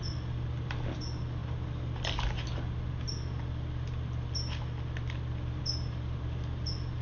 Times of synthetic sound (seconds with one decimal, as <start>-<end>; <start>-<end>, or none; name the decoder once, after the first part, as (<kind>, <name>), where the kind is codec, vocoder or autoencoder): none